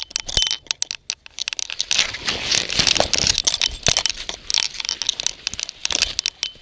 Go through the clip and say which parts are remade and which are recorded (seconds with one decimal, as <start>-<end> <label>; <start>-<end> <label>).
0.0-6.6 recorded